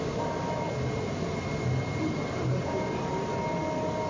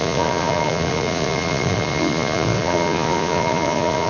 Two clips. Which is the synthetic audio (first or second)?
second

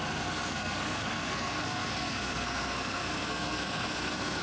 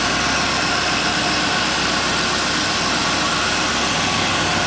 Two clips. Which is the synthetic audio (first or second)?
first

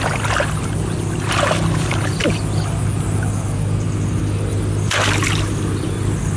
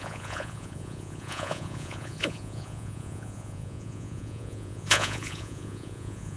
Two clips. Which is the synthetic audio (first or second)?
second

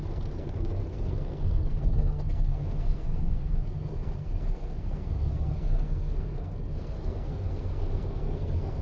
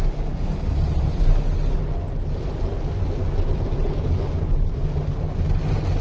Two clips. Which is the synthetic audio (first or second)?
first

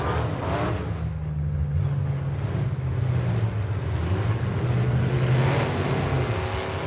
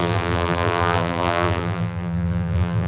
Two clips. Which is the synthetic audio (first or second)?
second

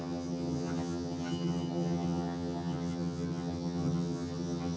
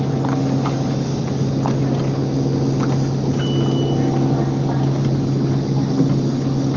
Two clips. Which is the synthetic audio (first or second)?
first